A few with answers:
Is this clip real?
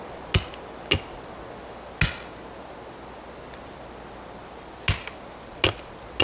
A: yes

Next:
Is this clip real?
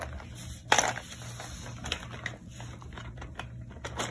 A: yes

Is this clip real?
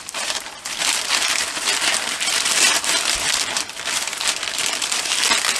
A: yes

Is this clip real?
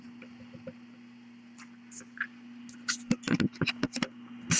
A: yes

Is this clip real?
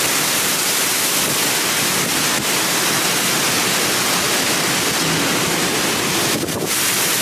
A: yes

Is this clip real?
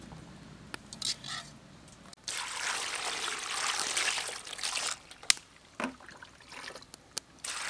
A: yes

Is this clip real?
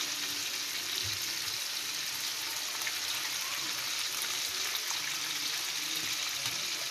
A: yes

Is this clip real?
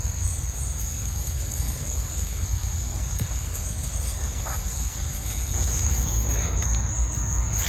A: no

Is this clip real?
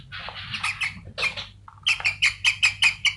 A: yes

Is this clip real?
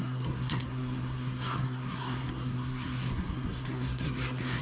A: no